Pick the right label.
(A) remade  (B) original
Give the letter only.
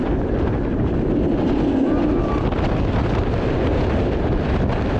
B